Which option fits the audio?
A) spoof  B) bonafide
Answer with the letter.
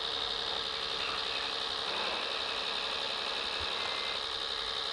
B